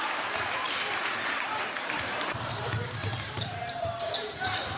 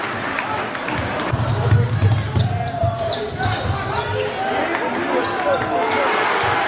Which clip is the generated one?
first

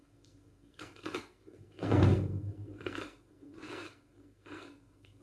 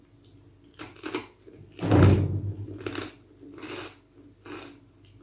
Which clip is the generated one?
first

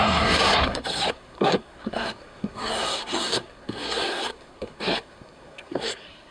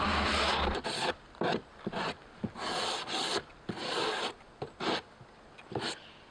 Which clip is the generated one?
first